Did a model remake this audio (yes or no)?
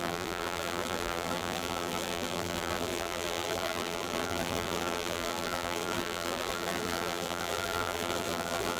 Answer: yes